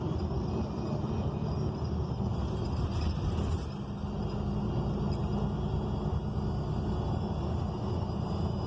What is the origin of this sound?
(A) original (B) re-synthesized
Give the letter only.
A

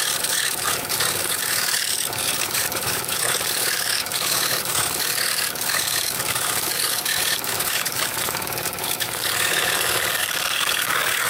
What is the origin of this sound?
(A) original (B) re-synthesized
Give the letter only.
B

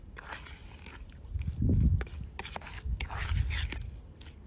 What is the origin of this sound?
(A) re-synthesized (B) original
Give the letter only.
B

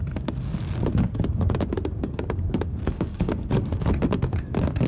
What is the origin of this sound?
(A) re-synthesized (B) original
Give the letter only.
A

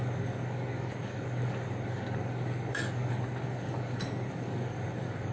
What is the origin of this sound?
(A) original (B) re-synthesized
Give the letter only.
B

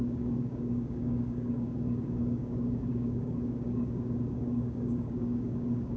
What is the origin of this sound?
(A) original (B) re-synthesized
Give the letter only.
B